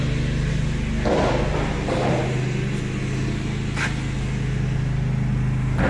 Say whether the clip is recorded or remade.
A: recorded